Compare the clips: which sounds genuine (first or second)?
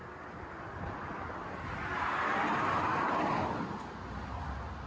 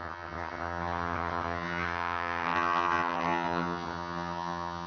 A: first